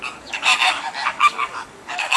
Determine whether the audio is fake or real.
fake